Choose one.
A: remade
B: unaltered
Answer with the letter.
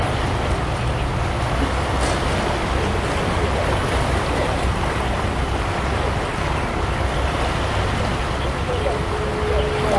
B